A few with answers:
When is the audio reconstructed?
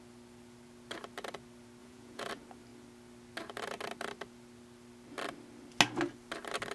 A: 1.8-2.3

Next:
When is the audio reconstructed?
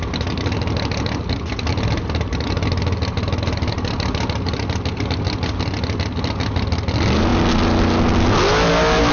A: none